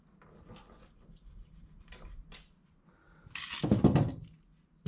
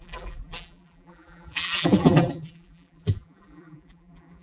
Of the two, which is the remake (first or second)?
second